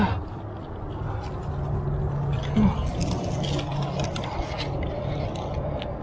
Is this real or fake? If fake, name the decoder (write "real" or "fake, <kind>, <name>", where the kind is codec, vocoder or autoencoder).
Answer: real